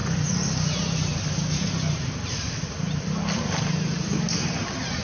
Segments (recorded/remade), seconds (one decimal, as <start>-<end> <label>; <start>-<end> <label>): 0.0-5.0 recorded